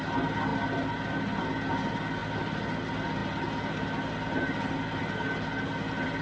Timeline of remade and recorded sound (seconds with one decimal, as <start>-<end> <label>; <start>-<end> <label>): 0.0-6.2 recorded